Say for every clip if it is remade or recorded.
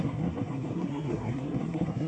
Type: remade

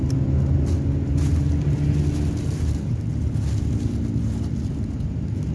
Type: recorded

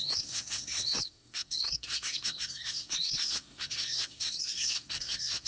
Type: remade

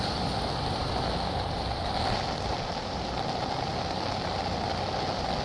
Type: recorded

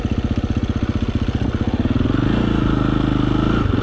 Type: recorded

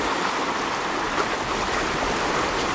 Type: recorded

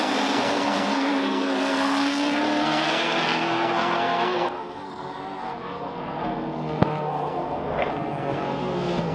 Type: remade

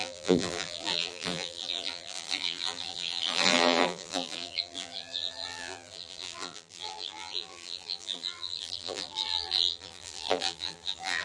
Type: remade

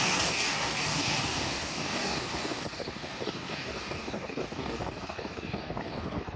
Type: remade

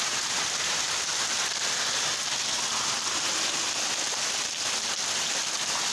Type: recorded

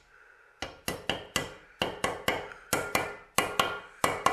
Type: recorded